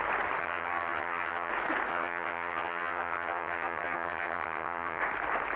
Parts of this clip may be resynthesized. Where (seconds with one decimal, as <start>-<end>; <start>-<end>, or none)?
0.4-1.5; 1.9-5.0